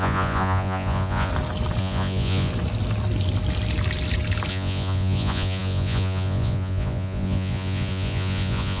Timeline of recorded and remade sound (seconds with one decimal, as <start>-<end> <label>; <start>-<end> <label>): 0.0-1.3 remade; 1.3-1.8 recorded; 1.8-2.5 remade; 2.5-4.5 recorded; 4.5-8.8 remade